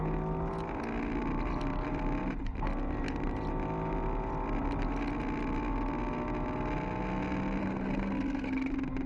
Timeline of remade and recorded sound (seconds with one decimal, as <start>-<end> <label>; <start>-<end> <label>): 0.0-7.6 recorded; 7.6-8.7 remade; 8.7-9.1 recorded